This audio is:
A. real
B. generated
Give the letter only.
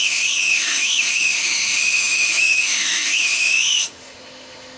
B